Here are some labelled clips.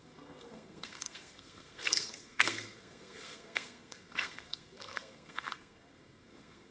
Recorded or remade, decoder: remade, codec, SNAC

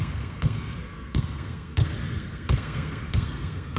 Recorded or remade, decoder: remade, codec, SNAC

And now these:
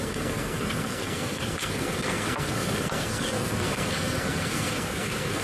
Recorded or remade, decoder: remade, codec, SNAC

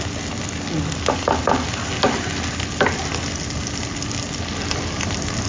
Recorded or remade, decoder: recorded